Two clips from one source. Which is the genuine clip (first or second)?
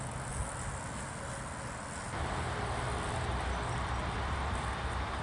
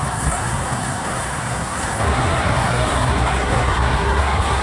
first